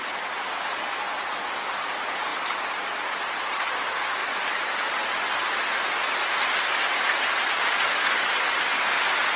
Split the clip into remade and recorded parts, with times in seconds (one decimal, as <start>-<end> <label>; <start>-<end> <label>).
0.0-9.4 recorded